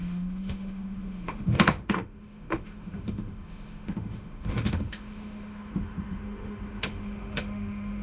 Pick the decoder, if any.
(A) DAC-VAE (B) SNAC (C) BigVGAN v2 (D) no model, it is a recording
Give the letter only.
A